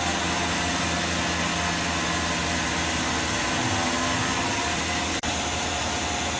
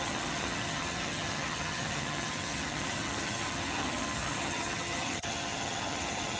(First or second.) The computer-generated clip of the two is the second